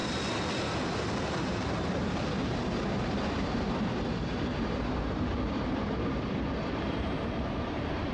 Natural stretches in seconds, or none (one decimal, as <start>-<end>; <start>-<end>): 0.0-1.4